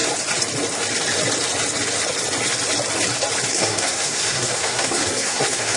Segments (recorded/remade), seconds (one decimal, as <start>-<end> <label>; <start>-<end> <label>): 0.0-3.5 recorded; 3.5-5.8 remade